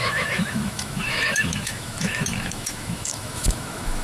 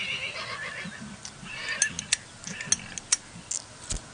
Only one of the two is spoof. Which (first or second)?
first